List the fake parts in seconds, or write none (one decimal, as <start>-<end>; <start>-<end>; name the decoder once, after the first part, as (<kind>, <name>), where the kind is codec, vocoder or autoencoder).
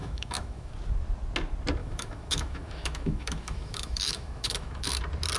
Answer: 0.0-0.7 (autoencoder, DAC-VAE); 1.8-5.0